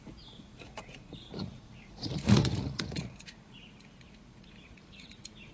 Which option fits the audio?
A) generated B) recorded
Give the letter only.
A